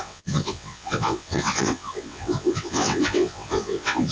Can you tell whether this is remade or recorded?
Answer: remade